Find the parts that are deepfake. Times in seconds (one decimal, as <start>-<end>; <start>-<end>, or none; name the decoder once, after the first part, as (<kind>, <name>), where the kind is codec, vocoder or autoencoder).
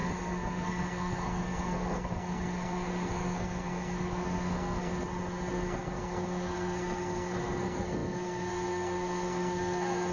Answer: 0.0-4.9 (codec, SNAC); 5.5-10.1